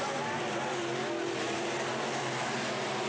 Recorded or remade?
recorded